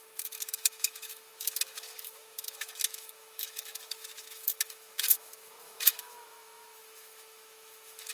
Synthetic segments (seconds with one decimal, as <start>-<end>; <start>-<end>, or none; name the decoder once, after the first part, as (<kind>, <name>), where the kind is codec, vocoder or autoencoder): 0.0-8.1 (autoencoder, DAC-VAE)